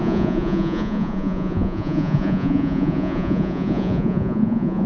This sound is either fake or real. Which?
fake